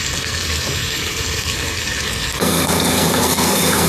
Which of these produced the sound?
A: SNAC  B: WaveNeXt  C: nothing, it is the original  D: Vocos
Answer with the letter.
A